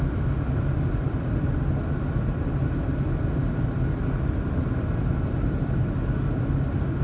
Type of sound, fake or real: real